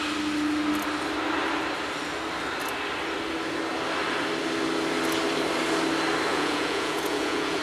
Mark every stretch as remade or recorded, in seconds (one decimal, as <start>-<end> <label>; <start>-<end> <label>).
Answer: 0.0-6.3 recorded; 6.3-7.6 remade